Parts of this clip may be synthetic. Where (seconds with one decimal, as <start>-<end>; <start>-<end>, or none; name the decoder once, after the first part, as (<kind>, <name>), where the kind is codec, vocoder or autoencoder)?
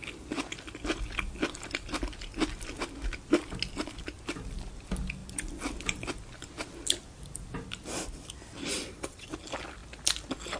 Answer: 8.7-9.3 (vocoder, WaveNeXt)